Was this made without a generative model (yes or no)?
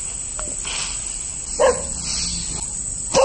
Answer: yes